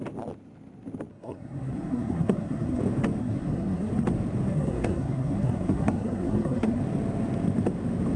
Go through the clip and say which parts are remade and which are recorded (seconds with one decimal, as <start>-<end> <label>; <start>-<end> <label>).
0.0-1.1 recorded; 1.1-2.8 remade; 2.8-3.2 recorded; 3.2-3.9 remade; 3.9-4.5 recorded; 4.5-6.8 remade; 6.8-8.2 recorded